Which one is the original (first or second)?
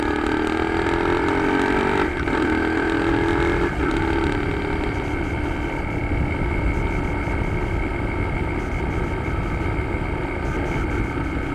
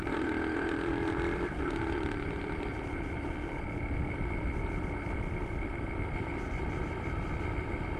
first